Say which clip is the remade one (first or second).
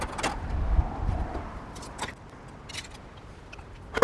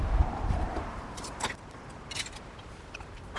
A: second